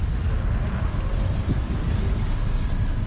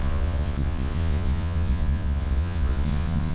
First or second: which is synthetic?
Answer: second